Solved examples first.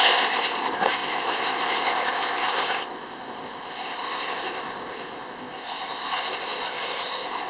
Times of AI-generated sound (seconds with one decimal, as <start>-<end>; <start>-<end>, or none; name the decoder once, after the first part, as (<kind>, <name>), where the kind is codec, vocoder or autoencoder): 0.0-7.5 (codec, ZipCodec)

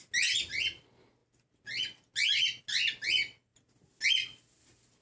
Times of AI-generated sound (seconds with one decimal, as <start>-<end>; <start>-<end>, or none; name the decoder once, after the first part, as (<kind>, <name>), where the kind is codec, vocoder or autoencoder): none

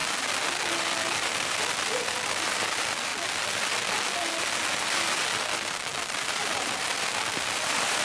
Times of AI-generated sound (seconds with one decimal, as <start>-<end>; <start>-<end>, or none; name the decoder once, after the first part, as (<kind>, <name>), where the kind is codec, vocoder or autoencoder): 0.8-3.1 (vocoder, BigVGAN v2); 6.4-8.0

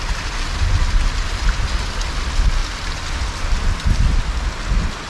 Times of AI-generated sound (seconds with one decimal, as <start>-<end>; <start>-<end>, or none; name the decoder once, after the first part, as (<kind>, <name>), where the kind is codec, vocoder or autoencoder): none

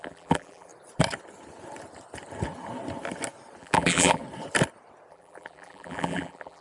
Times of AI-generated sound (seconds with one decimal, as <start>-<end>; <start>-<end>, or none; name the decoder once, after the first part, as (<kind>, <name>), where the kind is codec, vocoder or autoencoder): 0.0-0.7 (vocoder, BigVGAN v2); 3.6-4.2; 5.1-6.6

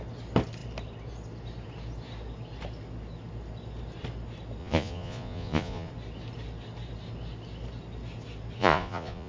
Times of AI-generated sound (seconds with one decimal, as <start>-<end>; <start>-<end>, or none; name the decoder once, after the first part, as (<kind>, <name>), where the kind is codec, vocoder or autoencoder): 4.6-5.9 (vocoder, Vocos); 8.6-9.3

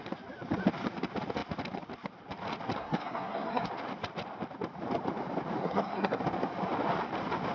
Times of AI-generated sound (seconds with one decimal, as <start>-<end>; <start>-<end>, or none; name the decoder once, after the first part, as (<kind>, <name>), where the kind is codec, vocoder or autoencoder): 2.8-3.7 (codec, SNAC); 5.6-6.2

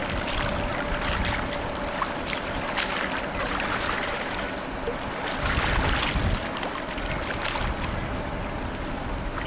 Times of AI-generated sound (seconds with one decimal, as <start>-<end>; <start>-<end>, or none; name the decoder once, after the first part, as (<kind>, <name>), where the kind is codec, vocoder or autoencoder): none